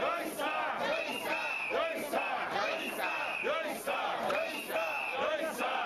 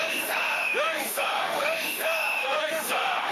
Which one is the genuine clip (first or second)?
first